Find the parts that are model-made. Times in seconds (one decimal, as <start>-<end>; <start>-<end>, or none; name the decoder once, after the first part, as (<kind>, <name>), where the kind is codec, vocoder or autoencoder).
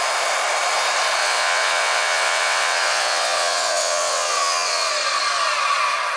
1.2-4.9 (vocoder, WaveNeXt)